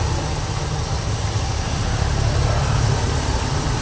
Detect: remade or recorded recorded